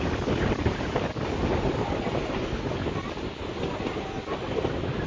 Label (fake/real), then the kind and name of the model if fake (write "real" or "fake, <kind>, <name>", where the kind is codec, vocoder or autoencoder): real